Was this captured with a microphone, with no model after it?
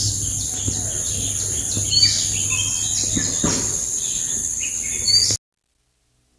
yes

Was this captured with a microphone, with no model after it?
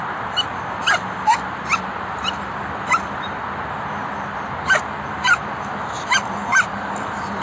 yes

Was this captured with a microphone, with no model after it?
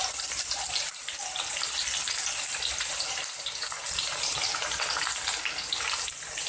yes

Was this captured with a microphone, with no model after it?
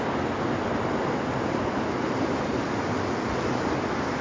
yes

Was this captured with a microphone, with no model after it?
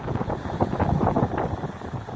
yes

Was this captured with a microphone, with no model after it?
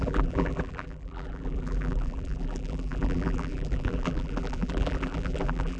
no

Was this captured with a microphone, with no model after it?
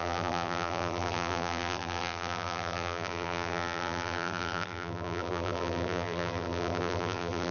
no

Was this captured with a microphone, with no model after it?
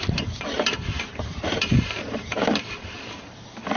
no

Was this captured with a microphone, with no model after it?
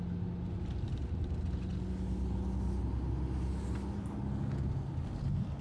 yes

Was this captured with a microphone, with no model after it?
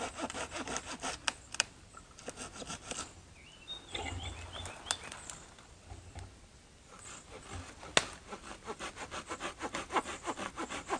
yes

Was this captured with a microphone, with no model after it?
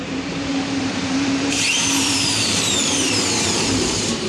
no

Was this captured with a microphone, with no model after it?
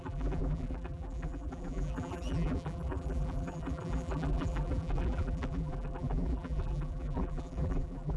no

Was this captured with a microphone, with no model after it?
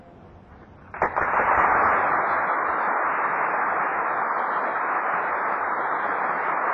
yes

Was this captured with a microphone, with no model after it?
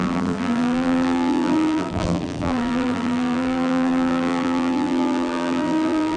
no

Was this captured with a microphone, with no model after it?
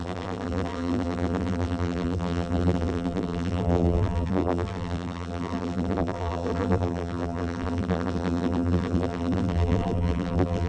no